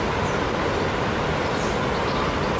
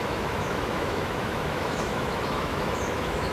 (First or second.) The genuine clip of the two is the first